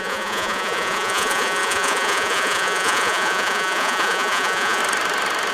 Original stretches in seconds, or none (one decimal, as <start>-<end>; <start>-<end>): 4.8-5.5